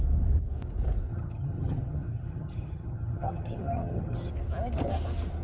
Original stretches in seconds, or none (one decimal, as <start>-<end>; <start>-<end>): 0.0-1.1; 4.3-5.4